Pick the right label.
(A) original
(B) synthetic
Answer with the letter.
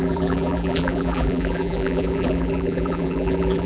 B